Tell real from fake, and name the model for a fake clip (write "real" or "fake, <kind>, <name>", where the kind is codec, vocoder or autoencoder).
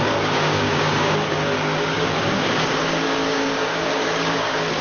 fake, codec, DAC